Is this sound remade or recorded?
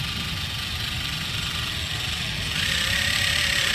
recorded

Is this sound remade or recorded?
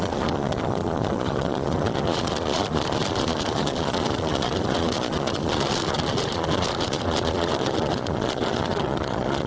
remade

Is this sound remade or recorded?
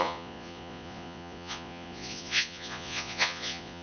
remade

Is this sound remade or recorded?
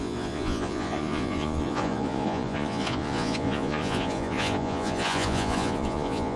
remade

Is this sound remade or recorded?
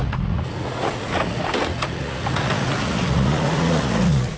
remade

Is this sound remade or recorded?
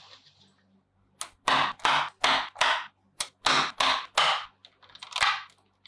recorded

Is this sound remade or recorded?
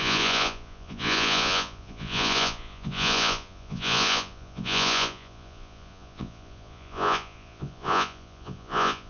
remade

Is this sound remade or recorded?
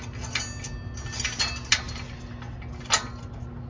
recorded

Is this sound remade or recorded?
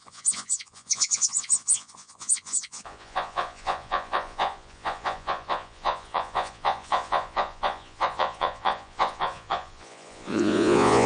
remade